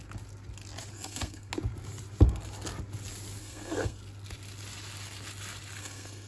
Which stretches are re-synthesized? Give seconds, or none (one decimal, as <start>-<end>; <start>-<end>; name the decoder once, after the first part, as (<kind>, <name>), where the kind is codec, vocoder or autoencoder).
0.9-1.5 (codec, SNAC); 3.4-4.0; 5.8-6.3